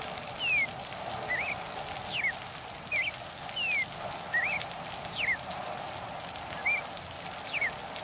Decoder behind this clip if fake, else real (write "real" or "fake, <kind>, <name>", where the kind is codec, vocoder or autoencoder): real